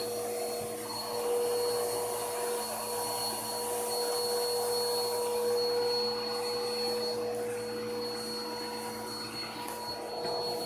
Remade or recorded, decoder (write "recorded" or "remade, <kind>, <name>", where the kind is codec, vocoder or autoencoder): recorded